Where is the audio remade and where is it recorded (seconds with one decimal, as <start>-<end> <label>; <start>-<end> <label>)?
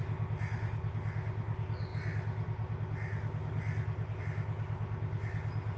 0.0-5.8 recorded